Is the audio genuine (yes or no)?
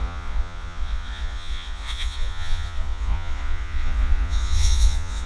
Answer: no